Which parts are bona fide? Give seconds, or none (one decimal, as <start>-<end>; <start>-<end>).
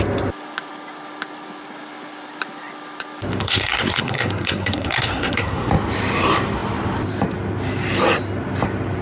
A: 0.0-3.4; 5.7-9.0